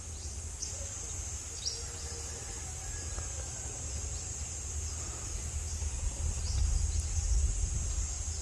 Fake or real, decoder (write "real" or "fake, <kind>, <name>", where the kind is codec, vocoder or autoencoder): real